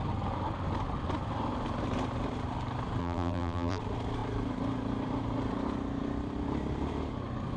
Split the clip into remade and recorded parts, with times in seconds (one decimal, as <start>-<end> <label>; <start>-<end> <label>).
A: 0.0-3.0 recorded; 3.0-3.8 remade; 3.8-7.6 recorded